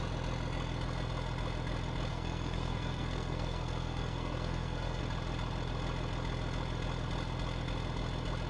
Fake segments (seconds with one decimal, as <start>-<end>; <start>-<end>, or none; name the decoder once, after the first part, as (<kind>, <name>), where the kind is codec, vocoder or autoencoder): 2.1-5.0 (codec, SNAC)